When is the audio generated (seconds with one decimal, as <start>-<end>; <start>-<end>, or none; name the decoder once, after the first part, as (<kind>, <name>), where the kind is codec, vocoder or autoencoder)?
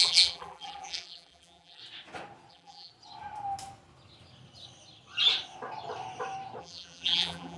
0.0-1.8 (vocoder, BigVGAN v2); 2.5-2.9; 6.6-7.6